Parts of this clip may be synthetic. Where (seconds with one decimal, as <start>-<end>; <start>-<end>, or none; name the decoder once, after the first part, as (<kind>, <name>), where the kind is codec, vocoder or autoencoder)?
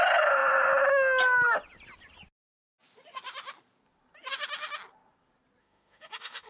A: 5.6-6.5 (autoencoder, DAC-VAE)